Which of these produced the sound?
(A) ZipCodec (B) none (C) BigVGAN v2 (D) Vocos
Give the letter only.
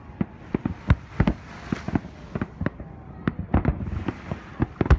B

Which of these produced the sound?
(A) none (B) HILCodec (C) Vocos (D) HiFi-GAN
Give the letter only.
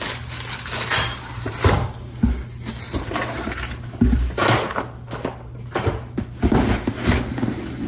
A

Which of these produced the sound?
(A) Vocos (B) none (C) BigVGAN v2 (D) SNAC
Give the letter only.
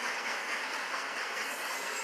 D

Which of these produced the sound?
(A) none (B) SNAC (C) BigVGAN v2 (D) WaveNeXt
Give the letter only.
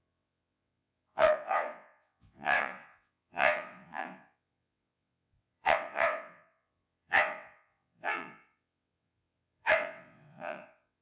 D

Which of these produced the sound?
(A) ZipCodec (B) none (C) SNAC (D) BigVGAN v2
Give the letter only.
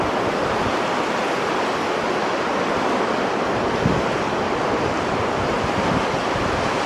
B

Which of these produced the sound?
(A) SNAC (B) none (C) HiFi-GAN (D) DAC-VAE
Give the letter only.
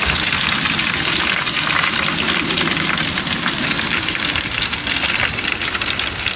B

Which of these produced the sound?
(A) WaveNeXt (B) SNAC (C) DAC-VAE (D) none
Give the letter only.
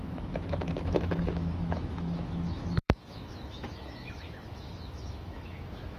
C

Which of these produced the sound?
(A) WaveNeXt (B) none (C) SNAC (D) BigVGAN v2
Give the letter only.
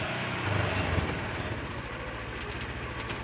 B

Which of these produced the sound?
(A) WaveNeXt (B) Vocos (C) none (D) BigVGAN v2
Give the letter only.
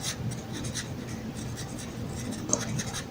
C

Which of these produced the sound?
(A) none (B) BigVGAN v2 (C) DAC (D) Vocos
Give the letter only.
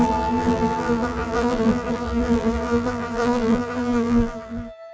B